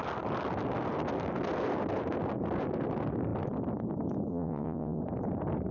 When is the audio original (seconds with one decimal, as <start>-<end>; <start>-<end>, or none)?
0.0-4.3; 5.0-5.7